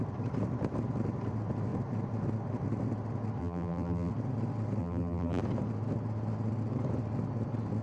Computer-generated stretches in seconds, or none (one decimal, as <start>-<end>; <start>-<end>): 3.4-4.1; 4.8-5.4